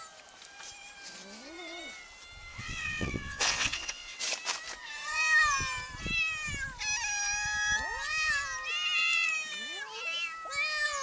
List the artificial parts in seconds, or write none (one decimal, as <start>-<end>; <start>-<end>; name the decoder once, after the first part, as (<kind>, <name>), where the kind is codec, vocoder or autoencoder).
2.5-4.2 (vocoder, WaveNeXt)